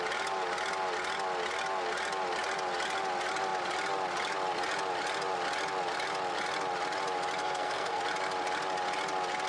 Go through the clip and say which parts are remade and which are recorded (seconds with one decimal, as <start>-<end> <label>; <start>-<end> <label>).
0.0-7.4 recorded; 7.4-8.0 remade; 8.0-9.5 recorded